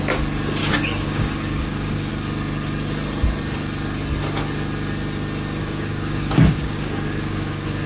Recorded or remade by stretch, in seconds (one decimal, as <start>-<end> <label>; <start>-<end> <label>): 0.0-0.6 recorded; 0.6-2.1 remade; 2.1-5.6 recorded; 5.6-7.9 remade